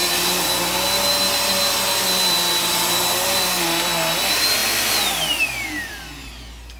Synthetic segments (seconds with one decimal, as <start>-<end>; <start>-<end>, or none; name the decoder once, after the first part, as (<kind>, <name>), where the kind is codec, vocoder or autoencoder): none